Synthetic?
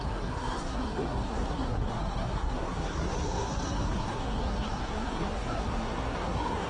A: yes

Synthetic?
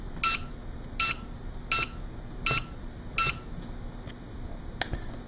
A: no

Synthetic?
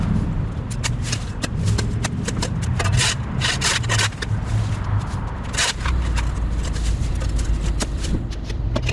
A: no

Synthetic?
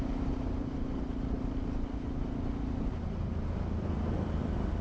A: no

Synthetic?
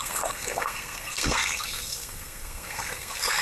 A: yes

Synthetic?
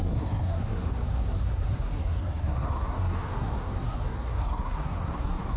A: yes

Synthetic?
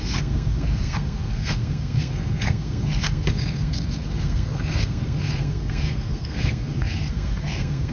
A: yes